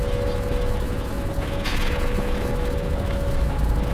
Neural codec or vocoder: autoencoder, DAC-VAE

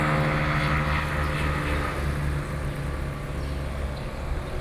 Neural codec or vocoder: none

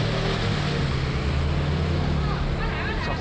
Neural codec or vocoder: none